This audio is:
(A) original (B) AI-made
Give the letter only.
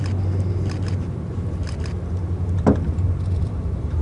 A